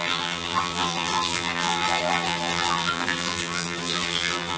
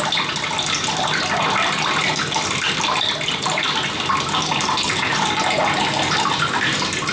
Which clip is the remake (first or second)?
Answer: first